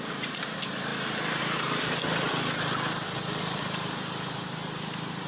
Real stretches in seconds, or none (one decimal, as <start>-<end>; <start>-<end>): 0.0-5.3